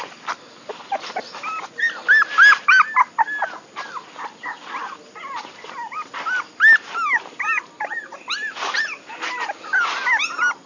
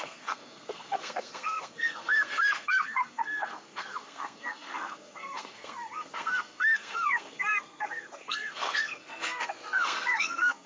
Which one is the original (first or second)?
first